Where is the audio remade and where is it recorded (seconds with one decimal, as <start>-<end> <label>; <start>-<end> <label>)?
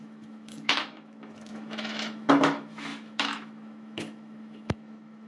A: 0.0-5.3 remade